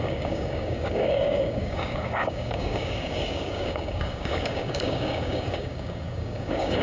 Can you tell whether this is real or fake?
fake